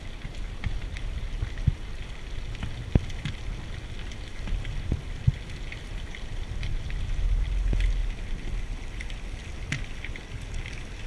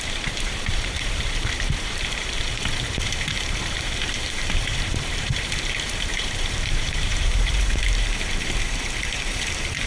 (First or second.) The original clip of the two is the first